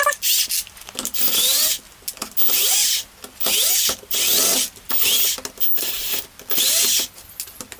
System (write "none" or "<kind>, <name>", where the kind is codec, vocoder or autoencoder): none